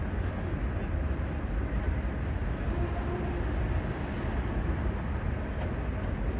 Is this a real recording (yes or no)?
yes